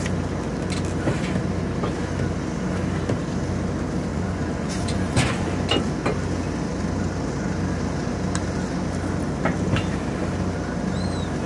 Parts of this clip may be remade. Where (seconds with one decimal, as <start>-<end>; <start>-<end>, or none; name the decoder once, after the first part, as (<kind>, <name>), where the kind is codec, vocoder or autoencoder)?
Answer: 4.1-5.5 (vocoder, Vocos)